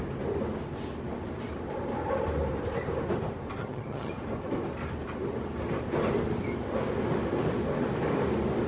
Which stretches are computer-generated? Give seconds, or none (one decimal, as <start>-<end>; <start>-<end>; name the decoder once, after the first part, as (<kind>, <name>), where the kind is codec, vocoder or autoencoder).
3.6-4.1 (vocoder, HiFi-GAN)